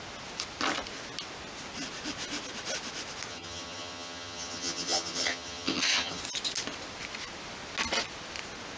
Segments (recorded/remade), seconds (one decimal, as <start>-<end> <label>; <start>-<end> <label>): 0.0-3.3 recorded; 3.3-6.2 remade; 6.2-8.8 recorded